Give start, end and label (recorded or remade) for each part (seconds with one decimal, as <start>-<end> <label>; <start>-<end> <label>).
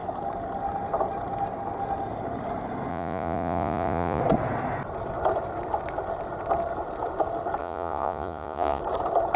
0.0-2.9 recorded; 2.9-4.2 remade; 4.2-7.6 recorded; 7.6-8.8 remade; 8.8-9.4 recorded